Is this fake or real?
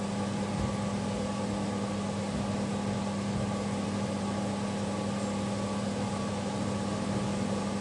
real